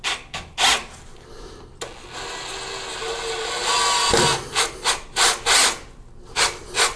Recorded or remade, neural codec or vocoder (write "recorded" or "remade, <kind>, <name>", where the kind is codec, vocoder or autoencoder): recorded